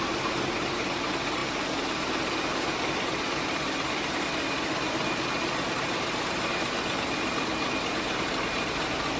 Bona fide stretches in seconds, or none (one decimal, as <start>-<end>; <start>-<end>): 0.0-9.2